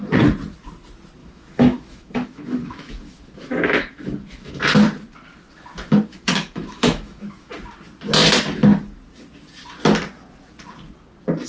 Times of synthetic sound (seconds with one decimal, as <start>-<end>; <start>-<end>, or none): 1.2-4.6; 6.1-7.5